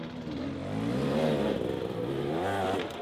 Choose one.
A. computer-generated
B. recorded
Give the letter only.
B